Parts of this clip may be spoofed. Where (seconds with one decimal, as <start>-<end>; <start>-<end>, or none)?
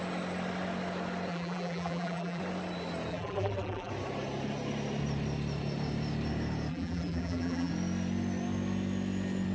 1.3-2.4; 3.1-3.9; 6.7-7.7